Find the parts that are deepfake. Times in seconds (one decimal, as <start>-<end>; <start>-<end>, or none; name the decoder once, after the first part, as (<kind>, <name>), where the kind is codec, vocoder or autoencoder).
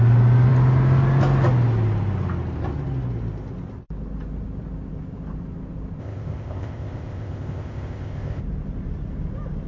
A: 6.0-8.4 (codec, ZipCodec)